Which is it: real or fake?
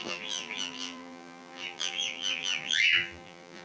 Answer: fake